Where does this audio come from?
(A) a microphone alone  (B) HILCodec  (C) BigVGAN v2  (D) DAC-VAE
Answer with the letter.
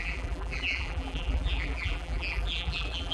C